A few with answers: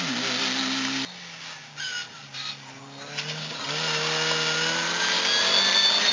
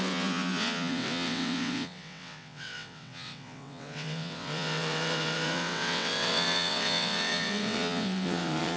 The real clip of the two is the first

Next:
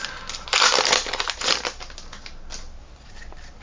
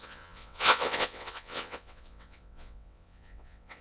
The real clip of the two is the first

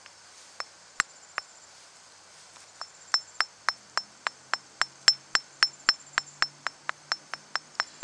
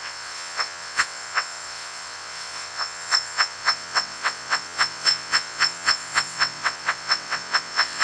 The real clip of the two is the first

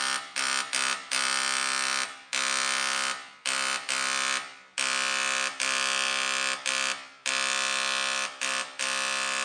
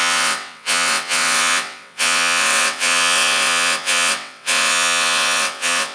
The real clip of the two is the first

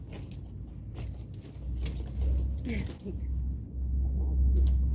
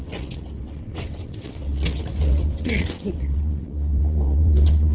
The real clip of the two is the first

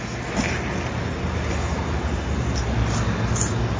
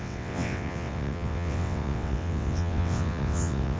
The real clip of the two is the first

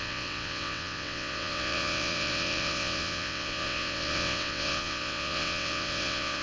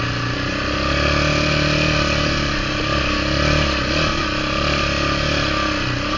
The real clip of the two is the second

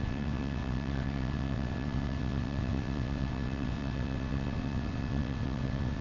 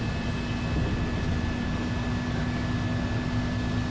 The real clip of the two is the second